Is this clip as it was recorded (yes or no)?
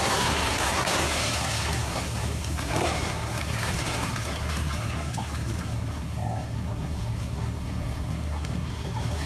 no